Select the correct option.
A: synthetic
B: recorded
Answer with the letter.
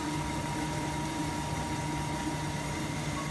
B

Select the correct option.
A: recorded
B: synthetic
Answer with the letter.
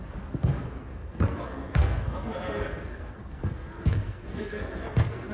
B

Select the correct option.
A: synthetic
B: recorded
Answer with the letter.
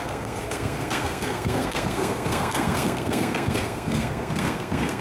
A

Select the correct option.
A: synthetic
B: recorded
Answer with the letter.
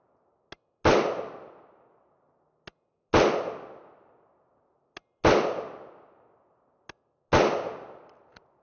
B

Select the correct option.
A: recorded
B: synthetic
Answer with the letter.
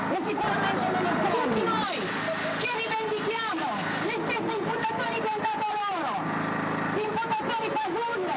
A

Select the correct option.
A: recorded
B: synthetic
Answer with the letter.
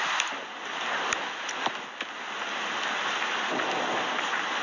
A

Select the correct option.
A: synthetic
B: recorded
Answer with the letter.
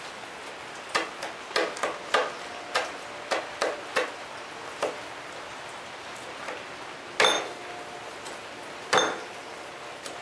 B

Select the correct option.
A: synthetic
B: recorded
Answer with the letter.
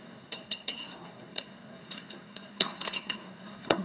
A